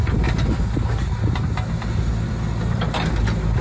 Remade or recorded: recorded